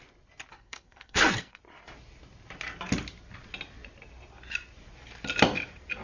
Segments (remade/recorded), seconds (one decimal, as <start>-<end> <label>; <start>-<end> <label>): 0.0-0.5 recorded; 0.5-1.6 remade; 1.6-6.0 recorded